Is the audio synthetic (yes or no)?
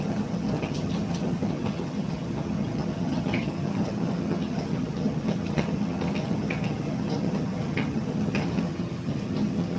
yes